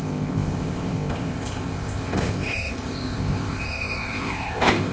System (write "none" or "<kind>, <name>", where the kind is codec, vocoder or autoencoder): codec, ZipCodec